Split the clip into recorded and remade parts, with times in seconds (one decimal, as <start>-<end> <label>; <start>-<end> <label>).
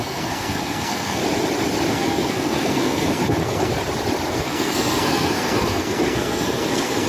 0.0-1.2 remade; 1.2-1.9 recorded; 1.9-3.7 remade; 3.7-4.3 recorded; 4.3-7.1 remade